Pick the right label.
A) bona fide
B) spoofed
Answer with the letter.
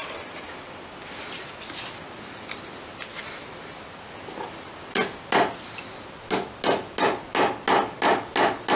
A